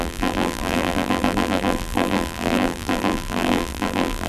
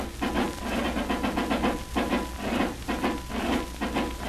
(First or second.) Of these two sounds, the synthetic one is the first